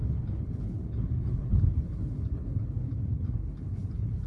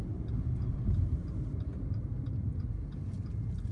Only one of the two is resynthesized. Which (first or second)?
first